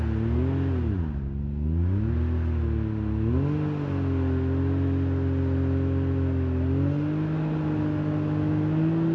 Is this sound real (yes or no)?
yes